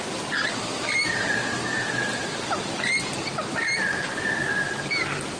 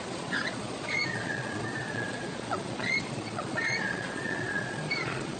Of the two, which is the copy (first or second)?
second